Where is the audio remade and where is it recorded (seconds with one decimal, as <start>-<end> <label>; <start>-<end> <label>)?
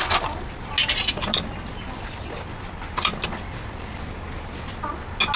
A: 0.0-0.8 recorded; 0.8-4.0 remade; 4.0-5.4 recorded